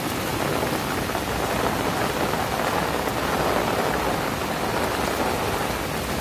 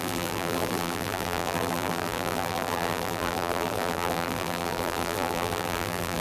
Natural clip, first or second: first